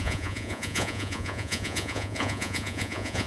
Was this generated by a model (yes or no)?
yes